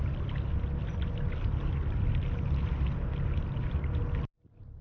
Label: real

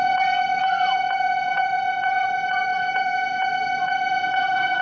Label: fake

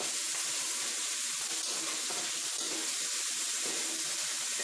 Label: real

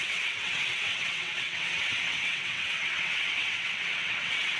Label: fake